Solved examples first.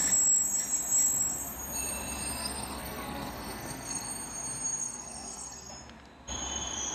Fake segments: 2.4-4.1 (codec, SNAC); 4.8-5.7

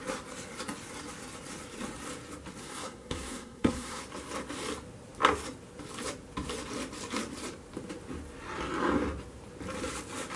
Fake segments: 2.6-4.0 (codec, SNAC)

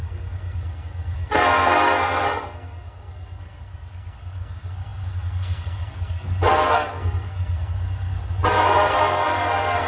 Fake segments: 0.0-9.9 (codec, SNAC)

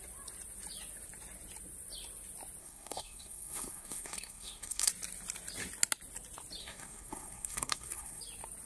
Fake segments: 2.6-4.9 (codec, SNAC); 6.6-8.2

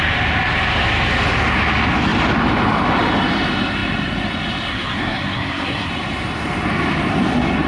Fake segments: 4.7-5.9 (codec, SNAC)

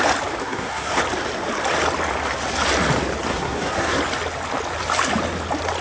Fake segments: 0.4-1.0 (codec, SNAC); 3.3-4.0